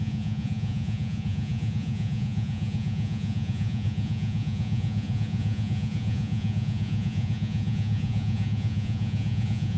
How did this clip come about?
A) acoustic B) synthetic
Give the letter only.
B